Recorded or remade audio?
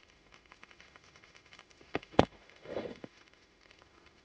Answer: remade